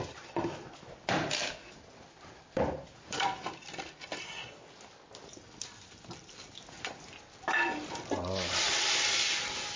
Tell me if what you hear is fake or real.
real